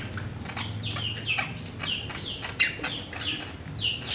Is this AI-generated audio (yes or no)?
no